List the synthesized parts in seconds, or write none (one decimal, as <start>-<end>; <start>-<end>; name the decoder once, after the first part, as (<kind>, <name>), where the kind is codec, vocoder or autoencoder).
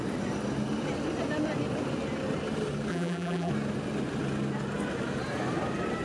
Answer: 2.9-3.5 (vocoder, BigVGAN v2)